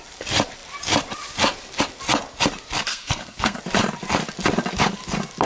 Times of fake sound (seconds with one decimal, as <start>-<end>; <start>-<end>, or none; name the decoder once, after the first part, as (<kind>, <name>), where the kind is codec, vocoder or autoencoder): 2.9-3.6 (codec, SNAC)